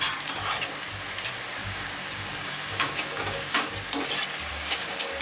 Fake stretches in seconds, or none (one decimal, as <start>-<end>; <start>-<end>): 1.6-3.7; 4.5-5.2